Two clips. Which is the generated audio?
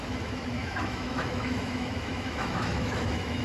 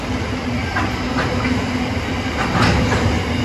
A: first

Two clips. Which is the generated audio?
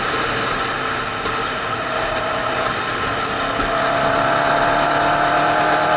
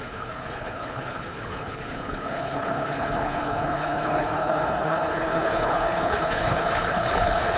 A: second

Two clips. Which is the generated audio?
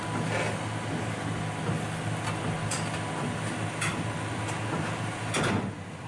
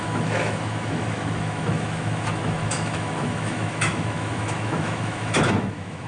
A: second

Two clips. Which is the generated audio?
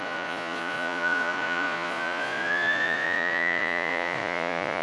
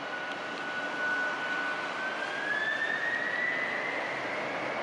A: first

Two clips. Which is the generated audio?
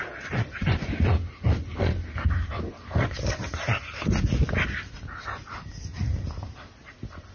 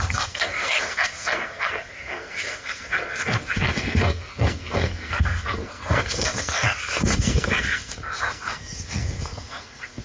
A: second